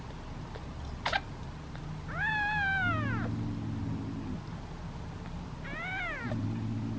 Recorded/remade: recorded